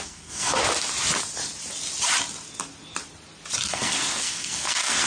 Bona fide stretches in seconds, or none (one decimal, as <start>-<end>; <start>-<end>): 0.6-3.7